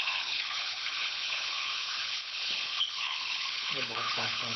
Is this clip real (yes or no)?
no